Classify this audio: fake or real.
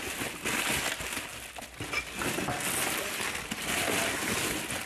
real